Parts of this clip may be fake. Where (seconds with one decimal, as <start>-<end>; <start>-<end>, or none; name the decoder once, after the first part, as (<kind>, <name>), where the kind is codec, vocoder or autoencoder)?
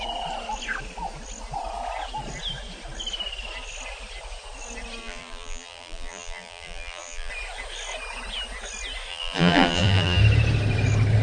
5.0-7.3 (vocoder, BigVGAN v2); 9.1-10.2